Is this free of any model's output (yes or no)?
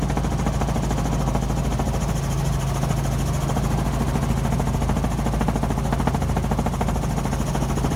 yes